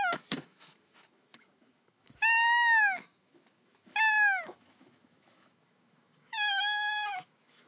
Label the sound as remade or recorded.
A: remade